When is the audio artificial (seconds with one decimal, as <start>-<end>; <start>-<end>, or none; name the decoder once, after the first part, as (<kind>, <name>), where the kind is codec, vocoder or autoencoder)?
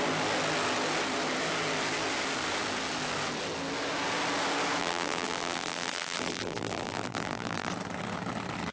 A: 4.8-7.7 (vocoder, BigVGAN v2)